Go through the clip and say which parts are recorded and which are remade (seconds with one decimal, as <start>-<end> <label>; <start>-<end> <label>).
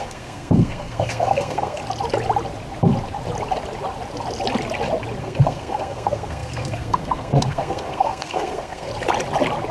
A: 0.0-1.8 remade; 1.8-5.2 recorded; 5.2-8.9 remade; 8.9-9.7 recorded